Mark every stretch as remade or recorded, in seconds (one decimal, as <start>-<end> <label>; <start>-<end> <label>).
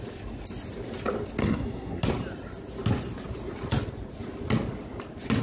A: 0.0-1.4 recorded; 1.4-2.0 remade; 2.0-5.4 recorded